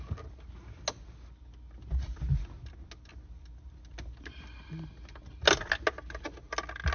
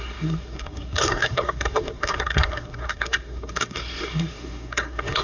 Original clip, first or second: first